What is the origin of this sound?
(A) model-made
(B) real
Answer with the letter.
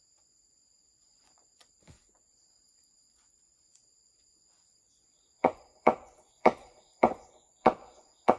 A